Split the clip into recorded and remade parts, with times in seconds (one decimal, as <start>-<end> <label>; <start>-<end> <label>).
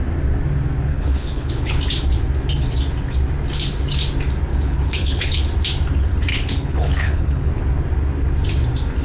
0.0-0.9 recorded; 0.9-1.8 remade; 1.8-4.5 recorded; 4.5-5.4 remade; 5.4-6.3 recorded; 6.3-7.5 remade; 7.5-9.0 recorded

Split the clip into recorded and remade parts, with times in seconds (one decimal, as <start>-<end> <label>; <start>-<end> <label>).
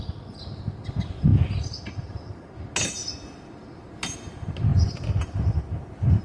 0.0-6.2 recorded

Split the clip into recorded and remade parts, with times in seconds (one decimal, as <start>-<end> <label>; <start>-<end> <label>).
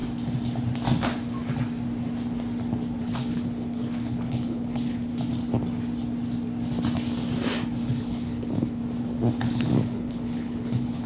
0.0-3.0 recorded; 3.0-5.1 remade; 5.1-7.8 recorded; 7.8-8.8 remade; 8.8-9.4 recorded; 9.4-11.1 remade